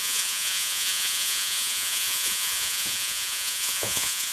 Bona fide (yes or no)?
no